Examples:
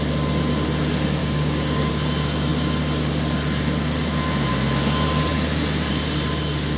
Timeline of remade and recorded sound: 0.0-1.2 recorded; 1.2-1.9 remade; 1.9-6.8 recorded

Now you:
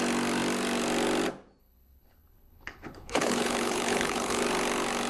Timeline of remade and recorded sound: 0.0-1.6 recorded; 1.6-4.4 remade; 4.4-5.1 recorded

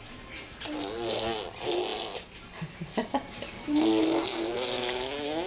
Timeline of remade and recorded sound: 0.0-5.5 recorded